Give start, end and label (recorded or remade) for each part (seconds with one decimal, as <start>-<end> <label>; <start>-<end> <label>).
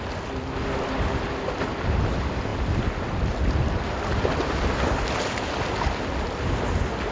0.0-7.1 recorded